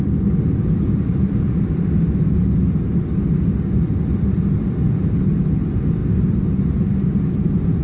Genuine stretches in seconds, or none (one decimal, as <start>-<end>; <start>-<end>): 0.0-7.8